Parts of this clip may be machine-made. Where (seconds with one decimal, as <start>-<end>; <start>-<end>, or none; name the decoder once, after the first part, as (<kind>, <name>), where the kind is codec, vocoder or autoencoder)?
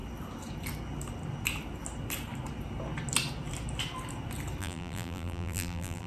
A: 4.6-6.1 (vocoder, BigVGAN v2)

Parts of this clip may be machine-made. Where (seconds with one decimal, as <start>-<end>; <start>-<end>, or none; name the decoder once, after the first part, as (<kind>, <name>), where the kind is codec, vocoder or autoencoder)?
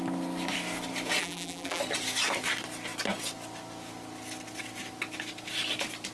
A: 1.2-1.8 (vocoder, BigVGAN v2)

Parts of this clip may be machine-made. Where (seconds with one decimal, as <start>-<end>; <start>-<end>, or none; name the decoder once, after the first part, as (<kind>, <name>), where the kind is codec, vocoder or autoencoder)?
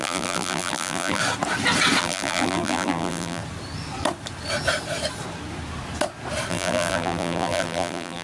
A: 0.0-1.2 (vocoder, BigVGAN v2); 2.0-3.4; 6.5-8.2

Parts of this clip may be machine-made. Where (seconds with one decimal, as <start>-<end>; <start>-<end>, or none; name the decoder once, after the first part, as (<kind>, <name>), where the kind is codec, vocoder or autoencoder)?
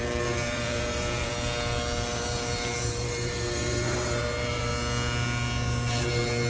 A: 0.0-1.3 (vocoder, BigVGAN v2); 2.1-4.7; 6.0-6.5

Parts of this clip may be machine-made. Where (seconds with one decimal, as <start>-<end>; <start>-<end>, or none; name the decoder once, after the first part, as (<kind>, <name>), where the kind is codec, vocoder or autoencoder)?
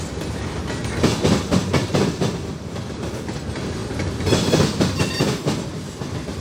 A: 1.6-2.5 (vocoder, BigVGAN v2)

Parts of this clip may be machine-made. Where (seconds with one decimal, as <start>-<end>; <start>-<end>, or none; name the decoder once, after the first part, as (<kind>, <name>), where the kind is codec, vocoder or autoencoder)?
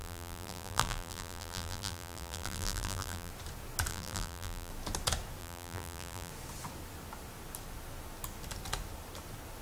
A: 0.0-3.3 (vocoder, BigVGAN v2); 3.9-4.7; 5.4-6.3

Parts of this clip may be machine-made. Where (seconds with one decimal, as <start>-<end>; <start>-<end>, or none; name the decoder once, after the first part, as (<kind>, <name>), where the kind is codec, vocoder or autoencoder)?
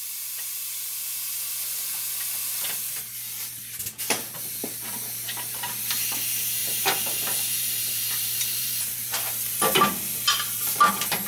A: 6.6-10.9 (vocoder, BigVGAN v2)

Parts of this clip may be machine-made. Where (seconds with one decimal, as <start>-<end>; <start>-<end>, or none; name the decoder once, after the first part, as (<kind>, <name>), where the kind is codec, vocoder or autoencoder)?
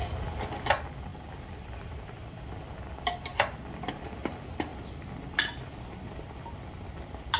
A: 1.1-2.6 (vocoder, BigVGAN v2); 3.3-3.9; 4.7-7.0